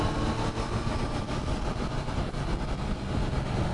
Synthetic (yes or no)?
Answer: no